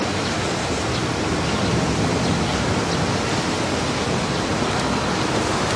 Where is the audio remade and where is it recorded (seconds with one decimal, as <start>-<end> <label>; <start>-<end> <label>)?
0.0-5.8 recorded